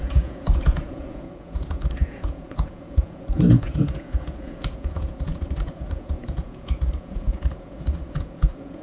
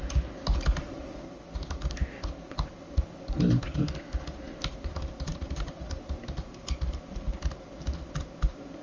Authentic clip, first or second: second